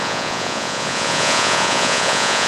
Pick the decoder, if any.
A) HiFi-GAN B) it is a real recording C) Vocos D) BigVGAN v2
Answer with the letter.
C